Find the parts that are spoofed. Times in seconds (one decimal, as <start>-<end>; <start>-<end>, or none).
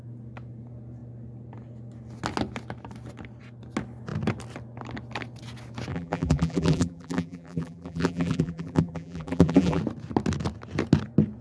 5.9-9.8